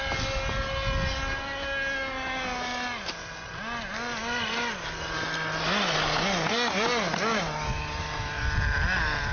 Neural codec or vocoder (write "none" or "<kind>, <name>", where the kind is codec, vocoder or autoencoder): none